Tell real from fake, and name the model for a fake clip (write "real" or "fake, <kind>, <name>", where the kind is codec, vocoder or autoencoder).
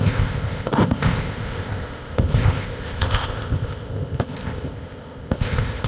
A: fake, codec, ZipCodec